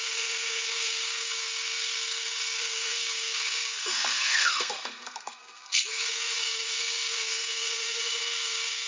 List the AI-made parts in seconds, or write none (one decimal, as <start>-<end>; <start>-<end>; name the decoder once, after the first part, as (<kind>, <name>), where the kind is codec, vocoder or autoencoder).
0.0-8.9 (codec, SNAC)